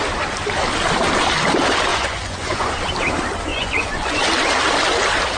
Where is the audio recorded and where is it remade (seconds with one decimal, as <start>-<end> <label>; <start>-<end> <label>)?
0.0-1.9 recorded; 1.9-2.7 remade; 2.7-3.5 recorded; 3.5-4.2 remade; 4.2-5.4 recorded